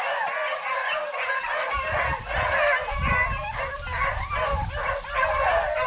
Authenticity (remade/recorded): recorded